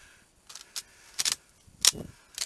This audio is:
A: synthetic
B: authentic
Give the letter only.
B